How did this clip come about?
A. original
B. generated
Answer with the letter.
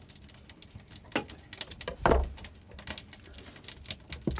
A